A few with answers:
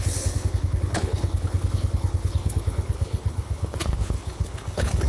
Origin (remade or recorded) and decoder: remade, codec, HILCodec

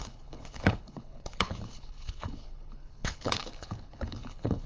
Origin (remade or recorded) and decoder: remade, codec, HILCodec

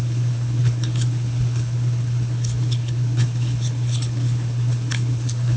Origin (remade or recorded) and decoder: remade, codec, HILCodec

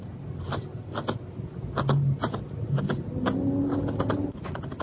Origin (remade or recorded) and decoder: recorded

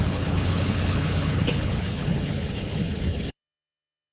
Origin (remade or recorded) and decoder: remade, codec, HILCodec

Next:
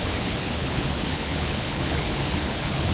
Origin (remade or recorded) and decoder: remade, codec, HILCodec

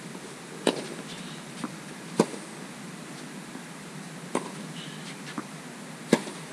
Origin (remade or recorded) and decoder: recorded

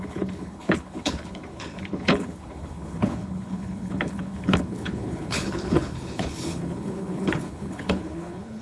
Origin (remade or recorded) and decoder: remade, codec, HILCodec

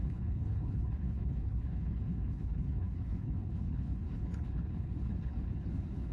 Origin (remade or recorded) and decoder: remade, codec, HILCodec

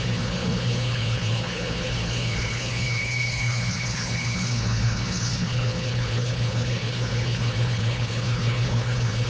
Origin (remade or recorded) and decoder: remade, codec, HILCodec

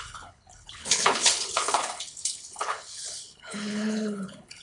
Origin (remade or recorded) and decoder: remade, codec, HILCodec